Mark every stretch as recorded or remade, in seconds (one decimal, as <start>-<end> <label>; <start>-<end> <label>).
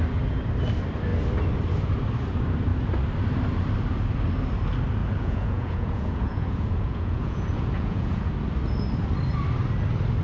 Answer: 0.0-5.0 recorded; 5.0-8.3 remade; 8.3-10.2 recorded